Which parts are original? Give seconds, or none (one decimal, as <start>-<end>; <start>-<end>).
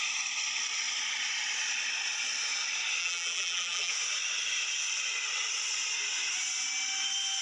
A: 0.0-3.0; 3.9-7.4